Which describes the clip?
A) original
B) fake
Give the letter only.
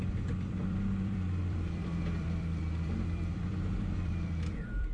B